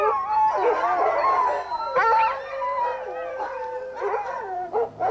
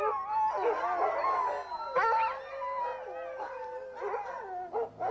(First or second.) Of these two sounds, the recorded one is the second